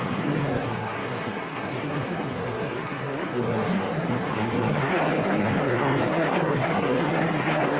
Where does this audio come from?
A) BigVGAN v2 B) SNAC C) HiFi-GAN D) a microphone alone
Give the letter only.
B